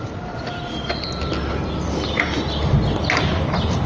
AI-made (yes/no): no